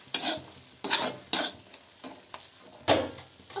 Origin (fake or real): real